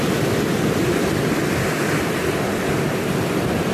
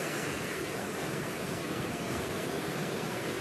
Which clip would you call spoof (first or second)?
second